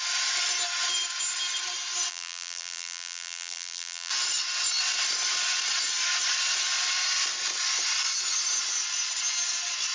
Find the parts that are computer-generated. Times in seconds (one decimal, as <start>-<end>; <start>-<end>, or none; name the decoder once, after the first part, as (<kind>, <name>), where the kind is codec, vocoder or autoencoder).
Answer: 2.1-4.1 (vocoder, BigVGAN v2)